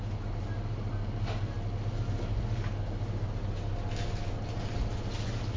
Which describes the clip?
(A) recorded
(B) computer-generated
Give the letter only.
A